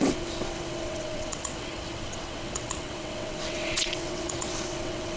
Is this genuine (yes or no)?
no